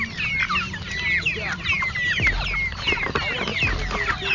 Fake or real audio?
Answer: real